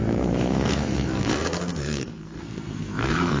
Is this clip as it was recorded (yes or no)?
no